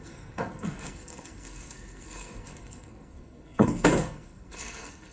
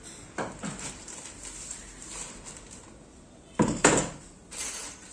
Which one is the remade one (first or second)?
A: first